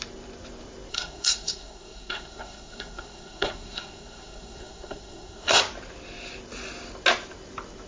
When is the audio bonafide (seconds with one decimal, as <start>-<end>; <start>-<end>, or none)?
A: 0.0-0.9; 5.6-7.9